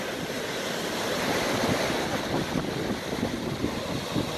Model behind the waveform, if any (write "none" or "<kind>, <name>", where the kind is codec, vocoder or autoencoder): vocoder, BigVGAN v2